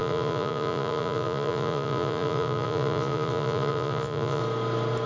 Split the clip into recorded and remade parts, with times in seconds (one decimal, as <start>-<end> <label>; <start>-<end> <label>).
0.0-4.4 remade; 4.4-5.1 recorded